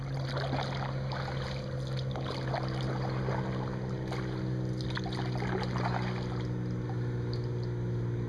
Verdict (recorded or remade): recorded